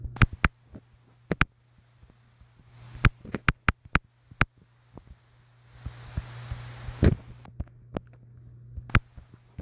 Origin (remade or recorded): recorded